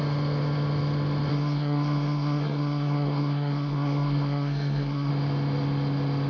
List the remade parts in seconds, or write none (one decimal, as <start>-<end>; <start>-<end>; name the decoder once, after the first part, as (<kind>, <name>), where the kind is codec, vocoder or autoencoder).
1.3-5.1 (codec, SNAC)

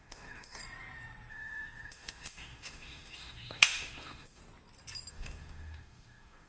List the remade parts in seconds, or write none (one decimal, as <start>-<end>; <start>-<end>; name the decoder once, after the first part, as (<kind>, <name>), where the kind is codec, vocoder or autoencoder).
0.0-0.6 (autoencoder, DAC-VAE); 1.3-4.4; 5.1-6.5

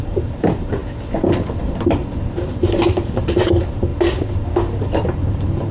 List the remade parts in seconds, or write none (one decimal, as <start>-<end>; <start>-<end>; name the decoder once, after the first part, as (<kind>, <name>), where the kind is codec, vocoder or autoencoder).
0.0-0.8 (vocoder, BigVGAN v2); 1.6-2.0; 2.5-3.9; 5.0-5.7

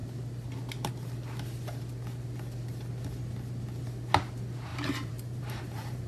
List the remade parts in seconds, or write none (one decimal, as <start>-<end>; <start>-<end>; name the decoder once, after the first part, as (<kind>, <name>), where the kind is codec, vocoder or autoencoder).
4.7-6.1 (vocoder, BigVGAN v2)